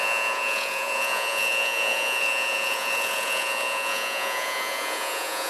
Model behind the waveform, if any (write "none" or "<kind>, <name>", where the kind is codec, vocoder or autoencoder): vocoder, Vocos